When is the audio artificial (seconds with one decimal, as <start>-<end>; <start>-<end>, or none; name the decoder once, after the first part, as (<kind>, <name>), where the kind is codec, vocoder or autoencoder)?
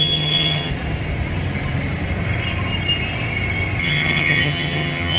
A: 0.0-0.7 (vocoder, HiFi-GAN); 3.8-5.2